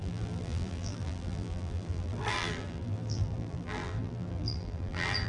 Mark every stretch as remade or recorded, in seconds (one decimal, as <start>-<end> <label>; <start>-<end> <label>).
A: 0.0-5.3 remade